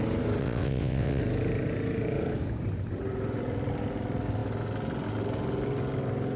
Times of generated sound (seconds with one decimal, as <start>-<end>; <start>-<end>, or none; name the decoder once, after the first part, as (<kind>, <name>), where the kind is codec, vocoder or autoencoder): 0.4-1.2 (vocoder, WaveNeXt)